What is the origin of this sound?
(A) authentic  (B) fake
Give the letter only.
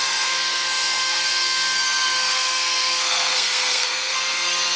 B